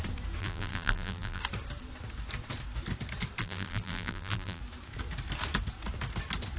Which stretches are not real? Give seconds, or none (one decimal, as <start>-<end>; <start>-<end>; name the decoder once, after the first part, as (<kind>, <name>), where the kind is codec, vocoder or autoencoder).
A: 0.4-1.4 (vocoder, BigVGAN v2); 3.4-4.6